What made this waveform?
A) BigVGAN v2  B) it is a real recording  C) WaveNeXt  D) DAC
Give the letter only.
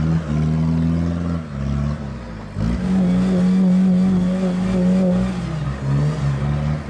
B